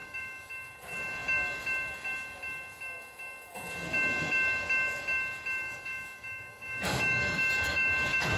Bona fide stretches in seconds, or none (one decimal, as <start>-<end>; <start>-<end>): 0.5-5.6; 7.9-8.4